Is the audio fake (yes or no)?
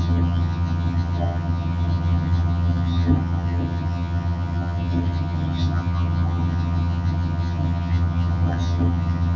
yes